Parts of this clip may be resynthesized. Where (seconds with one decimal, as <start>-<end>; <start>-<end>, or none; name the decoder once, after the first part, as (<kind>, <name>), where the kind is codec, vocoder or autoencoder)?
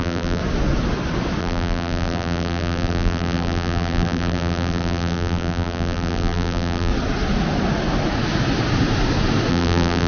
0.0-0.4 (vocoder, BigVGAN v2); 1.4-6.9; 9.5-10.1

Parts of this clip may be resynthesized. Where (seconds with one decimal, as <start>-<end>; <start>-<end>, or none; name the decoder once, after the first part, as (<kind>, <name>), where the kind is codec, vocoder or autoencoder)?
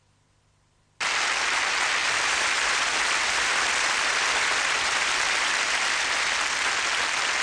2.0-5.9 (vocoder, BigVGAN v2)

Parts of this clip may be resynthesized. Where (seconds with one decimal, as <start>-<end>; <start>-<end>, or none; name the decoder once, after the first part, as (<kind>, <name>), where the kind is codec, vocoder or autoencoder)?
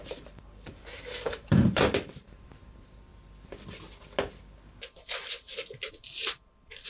0.0-3.1 (vocoder, BigVGAN v2); 5.9-6.9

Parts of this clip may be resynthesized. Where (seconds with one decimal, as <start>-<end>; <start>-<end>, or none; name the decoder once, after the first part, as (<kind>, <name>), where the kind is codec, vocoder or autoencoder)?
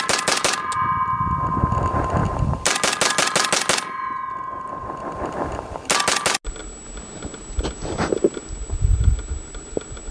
none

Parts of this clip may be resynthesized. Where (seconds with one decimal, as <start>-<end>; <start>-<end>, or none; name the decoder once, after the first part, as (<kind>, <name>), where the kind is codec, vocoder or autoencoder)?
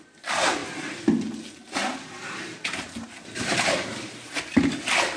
none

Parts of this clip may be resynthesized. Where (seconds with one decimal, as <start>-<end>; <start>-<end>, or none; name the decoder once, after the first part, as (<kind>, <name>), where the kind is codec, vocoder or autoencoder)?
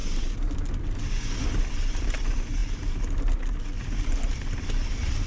none